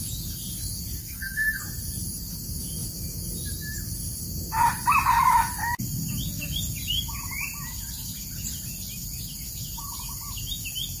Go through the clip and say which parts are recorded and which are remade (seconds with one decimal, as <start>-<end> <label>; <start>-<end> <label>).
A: 0.0-1.0 recorded; 1.0-1.6 remade; 1.6-11.0 recorded